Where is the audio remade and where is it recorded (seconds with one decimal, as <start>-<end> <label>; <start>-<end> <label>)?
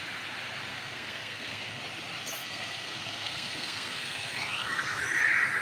0.0-0.7 recorded; 0.7-1.8 remade; 1.8-2.4 recorded; 2.4-5.0 remade; 5.0-5.6 recorded